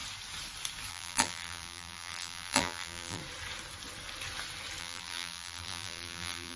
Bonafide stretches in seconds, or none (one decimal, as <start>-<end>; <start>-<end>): 0.0-0.9; 3.2-4.8